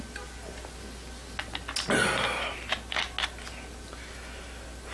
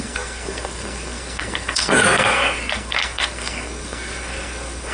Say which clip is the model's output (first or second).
second